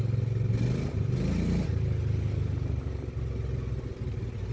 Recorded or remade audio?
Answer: recorded